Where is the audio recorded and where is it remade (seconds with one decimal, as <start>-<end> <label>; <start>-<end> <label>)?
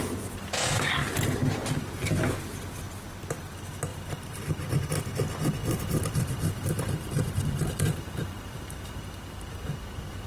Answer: 0.0-3.9 recorded; 3.9-4.7 remade; 4.7-5.6 recorded; 5.6-8.9 remade; 8.9-10.3 recorded